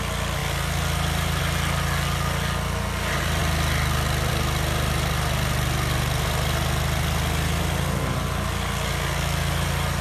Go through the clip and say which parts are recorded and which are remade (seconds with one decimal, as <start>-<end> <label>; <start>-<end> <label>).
0.0-10.0 recorded